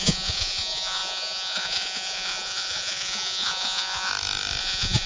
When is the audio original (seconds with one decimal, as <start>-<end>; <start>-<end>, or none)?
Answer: 4.1-4.6